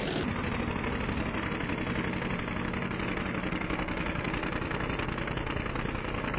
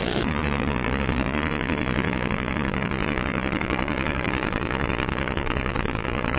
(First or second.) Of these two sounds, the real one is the first